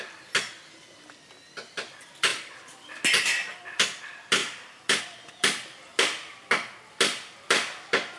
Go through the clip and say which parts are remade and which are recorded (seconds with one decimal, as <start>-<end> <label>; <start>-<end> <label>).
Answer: 0.0-4.4 recorded; 4.4-5.0 remade; 5.0-8.2 recorded